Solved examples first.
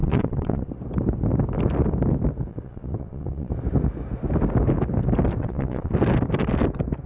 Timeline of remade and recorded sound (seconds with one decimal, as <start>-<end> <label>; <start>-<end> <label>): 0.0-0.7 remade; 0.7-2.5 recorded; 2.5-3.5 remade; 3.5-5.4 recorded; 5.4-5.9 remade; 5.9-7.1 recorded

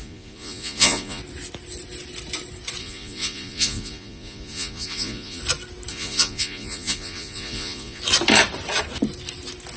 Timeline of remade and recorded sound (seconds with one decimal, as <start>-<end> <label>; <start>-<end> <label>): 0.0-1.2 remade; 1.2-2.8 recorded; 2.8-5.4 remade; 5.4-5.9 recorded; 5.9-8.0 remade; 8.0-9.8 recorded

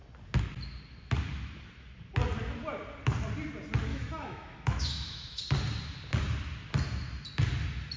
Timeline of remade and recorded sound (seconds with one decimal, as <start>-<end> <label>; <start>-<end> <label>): 0.0-3.9 recorded; 3.9-5.4 remade; 5.4-8.0 recorded

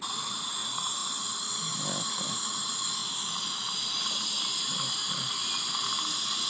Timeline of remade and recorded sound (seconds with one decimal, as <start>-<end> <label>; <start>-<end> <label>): 0.0-6.5 recorded